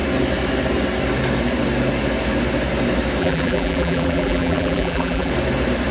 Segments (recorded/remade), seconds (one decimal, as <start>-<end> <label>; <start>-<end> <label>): 0.0-3.2 recorded; 3.2-5.3 remade; 5.3-5.9 recorded